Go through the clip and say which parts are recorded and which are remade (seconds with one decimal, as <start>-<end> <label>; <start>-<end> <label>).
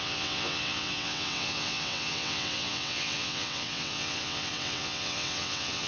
0.0-5.9 remade